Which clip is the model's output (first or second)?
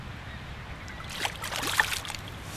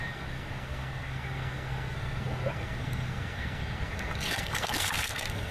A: second